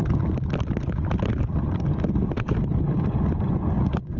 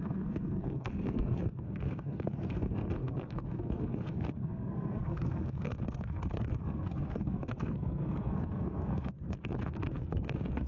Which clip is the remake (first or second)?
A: second